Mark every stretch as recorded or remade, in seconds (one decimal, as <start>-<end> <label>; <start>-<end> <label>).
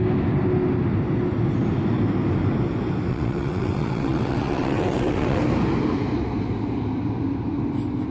0.0-3.1 recorded; 3.1-5.4 remade; 5.4-8.1 recorded